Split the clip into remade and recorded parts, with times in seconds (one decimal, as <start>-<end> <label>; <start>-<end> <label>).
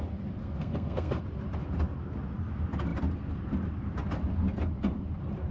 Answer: 0.0-0.4 recorded; 0.4-1.2 remade; 1.2-5.5 recorded